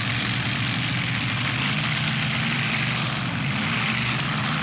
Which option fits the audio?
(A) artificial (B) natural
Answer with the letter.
B